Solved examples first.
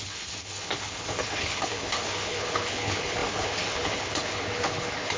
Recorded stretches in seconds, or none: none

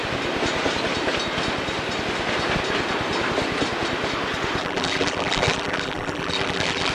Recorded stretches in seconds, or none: 0.0-4.6

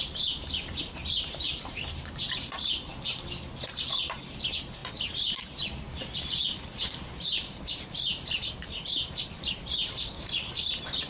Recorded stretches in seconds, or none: 2.9-4.2

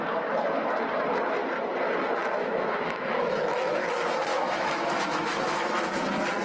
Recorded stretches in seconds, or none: 0.0-2.2; 6.0-6.4